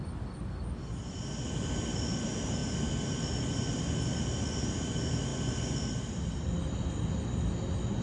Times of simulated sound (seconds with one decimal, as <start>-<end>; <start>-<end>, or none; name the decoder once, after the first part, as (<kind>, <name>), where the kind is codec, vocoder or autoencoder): none